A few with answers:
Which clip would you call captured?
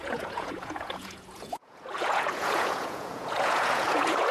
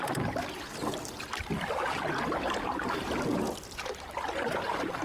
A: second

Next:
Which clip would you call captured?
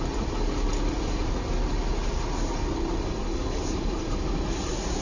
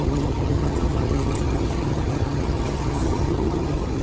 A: first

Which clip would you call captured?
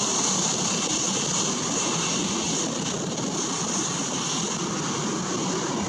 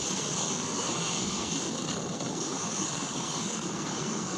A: first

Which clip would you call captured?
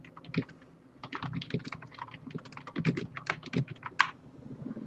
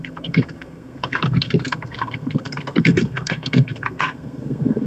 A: first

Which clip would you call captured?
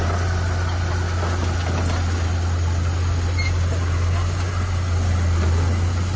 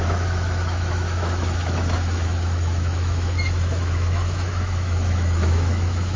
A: first